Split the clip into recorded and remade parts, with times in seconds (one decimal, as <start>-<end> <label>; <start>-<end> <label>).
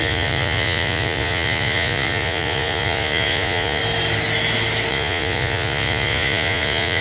0.0-3.8 remade; 3.8-4.9 recorded; 4.9-7.0 remade